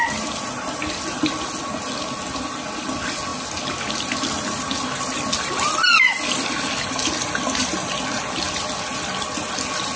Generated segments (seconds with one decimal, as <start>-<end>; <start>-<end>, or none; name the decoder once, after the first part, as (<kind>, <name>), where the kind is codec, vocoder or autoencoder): none